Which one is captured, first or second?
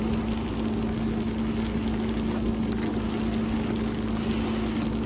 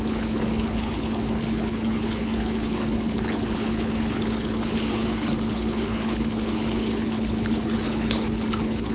first